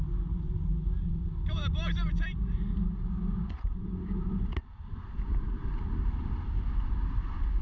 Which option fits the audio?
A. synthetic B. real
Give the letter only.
B